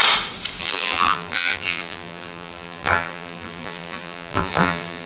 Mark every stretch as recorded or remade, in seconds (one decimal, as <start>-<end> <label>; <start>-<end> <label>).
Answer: 0.0-0.6 recorded; 0.6-5.1 remade